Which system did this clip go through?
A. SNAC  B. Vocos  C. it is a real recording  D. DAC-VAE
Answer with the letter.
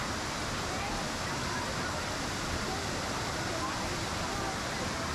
C